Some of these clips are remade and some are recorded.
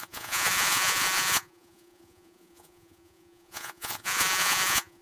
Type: remade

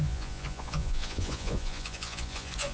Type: remade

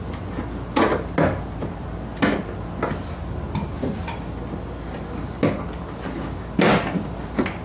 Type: recorded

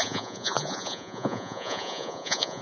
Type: remade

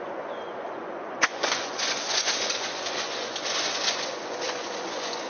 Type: remade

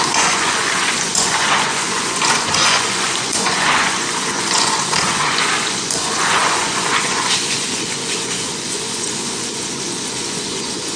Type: remade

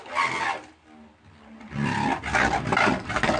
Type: recorded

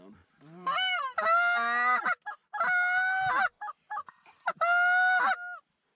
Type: recorded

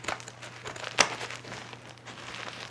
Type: recorded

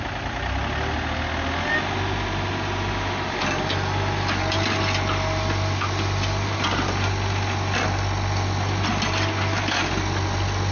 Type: recorded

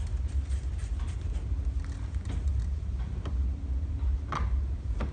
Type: recorded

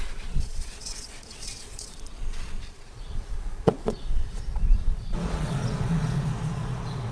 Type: remade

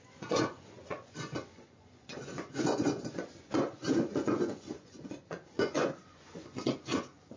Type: remade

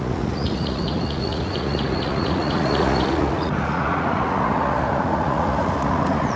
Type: remade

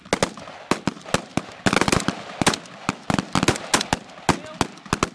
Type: recorded